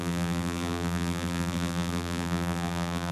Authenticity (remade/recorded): remade